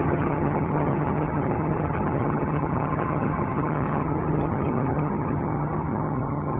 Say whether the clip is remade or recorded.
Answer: remade